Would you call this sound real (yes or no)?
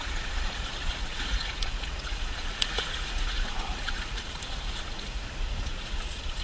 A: no